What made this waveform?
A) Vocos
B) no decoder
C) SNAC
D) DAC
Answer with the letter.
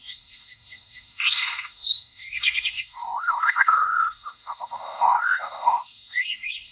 C